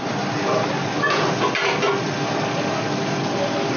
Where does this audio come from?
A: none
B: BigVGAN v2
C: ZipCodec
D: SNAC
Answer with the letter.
A